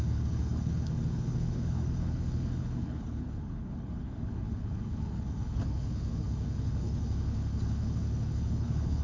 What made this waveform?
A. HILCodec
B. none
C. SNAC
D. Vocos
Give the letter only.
A